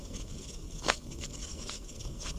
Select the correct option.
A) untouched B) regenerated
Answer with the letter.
B